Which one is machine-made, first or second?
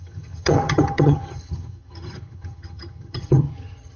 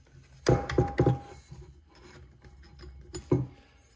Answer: first